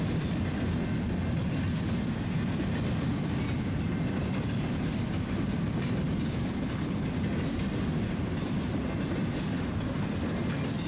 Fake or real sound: real